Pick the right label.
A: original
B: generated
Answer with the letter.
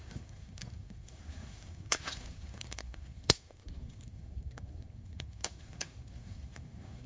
B